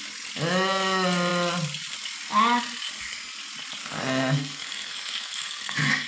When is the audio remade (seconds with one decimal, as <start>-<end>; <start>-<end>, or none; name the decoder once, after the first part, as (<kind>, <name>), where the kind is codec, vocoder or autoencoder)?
3.8-6.1 (codec, SNAC)